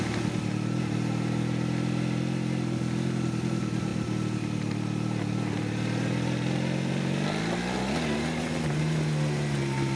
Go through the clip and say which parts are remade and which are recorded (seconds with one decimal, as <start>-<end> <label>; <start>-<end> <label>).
0.0-10.0 recorded